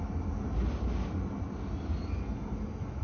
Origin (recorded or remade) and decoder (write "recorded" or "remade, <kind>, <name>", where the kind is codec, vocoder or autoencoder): recorded